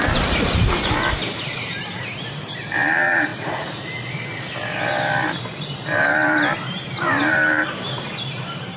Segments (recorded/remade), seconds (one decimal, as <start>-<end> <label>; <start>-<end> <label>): 0.0-8.8 remade